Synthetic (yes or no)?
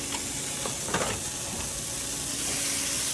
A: no